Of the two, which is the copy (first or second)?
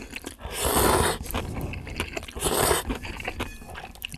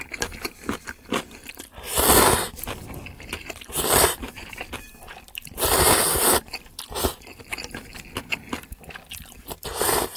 second